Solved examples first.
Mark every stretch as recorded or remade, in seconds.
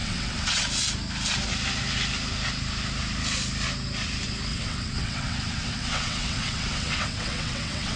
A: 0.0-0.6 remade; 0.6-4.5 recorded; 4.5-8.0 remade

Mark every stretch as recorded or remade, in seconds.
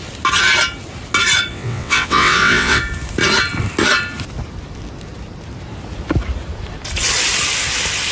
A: 0.0-1.5 recorded; 1.5-2.8 remade; 2.8-8.1 recorded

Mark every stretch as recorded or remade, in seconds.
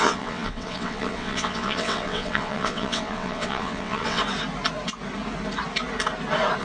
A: 0.0-4.2 remade; 4.2-6.6 recorded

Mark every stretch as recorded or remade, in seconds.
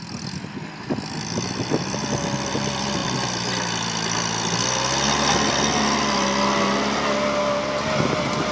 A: 0.0-8.5 recorded